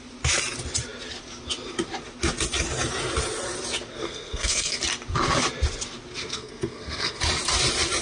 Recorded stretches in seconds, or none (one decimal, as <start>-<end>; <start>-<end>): 0.0-3.9; 4.8-6.2; 7.2-8.0